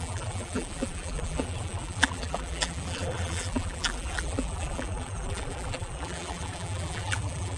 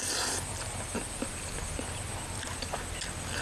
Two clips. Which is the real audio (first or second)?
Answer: second